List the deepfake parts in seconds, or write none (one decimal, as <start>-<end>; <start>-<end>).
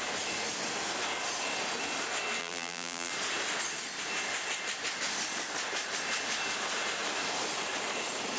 2.4-3.1